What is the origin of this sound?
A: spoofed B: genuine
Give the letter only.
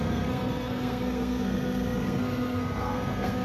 A